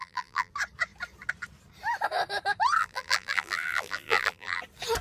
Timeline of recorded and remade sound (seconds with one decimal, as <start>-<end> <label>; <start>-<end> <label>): 0.0-0.5 remade; 0.5-2.8 recorded; 2.8-4.6 remade; 4.6-5.0 recorded